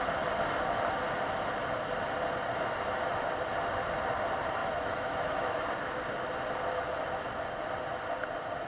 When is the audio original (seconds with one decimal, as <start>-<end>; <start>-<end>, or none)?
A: 0.0-4.6; 5.5-8.7